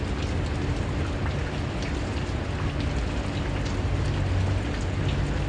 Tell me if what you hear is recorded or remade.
recorded